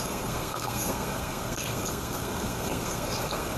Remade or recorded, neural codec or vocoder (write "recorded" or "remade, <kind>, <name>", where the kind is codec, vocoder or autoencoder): remade, codec, SNAC